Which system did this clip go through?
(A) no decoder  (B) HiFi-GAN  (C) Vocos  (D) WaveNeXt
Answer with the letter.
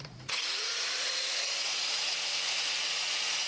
C